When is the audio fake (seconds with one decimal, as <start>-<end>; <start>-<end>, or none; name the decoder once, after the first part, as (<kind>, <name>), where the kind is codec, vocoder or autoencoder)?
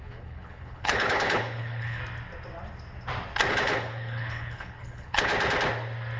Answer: 0.0-2.0 (codec, HILCodec); 3.5-5.3